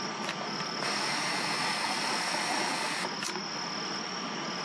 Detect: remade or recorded recorded